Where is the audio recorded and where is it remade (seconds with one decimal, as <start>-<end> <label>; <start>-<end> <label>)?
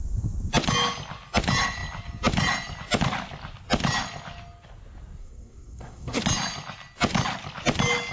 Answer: 0.0-5.2 recorded; 5.2-6.2 remade; 6.2-8.1 recorded